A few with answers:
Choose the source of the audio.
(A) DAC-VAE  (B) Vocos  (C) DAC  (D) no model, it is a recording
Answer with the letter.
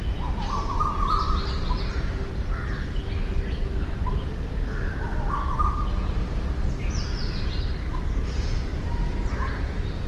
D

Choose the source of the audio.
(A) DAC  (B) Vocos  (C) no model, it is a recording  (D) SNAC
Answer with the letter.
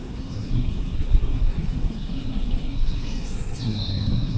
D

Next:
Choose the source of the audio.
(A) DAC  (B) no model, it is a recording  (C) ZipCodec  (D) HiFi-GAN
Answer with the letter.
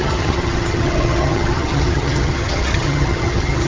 D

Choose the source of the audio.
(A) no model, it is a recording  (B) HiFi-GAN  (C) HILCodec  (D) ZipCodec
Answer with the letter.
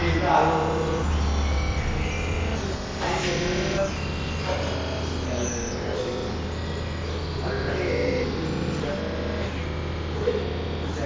A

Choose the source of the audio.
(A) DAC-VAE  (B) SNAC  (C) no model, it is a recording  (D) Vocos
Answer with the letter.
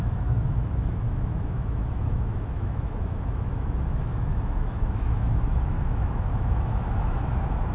A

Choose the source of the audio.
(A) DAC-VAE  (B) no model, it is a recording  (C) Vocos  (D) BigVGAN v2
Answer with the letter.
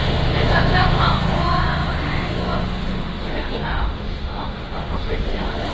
A